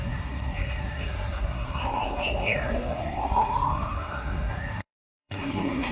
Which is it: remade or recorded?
remade